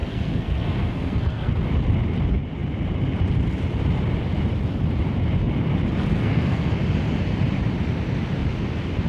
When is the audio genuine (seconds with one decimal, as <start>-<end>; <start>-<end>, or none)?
1.5-6.1; 6.7-9.1